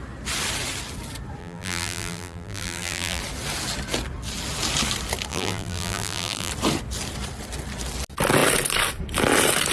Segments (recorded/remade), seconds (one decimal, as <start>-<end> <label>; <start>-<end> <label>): 0.0-1.4 recorded; 1.4-3.2 remade; 3.2-5.3 recorded; 5.3-6.5 remade; 6.5-9.7 recorded